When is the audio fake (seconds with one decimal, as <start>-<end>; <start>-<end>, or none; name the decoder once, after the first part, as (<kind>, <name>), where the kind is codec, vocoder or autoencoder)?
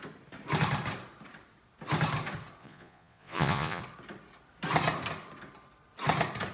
2.6-3.8 (vocoder, Vocos)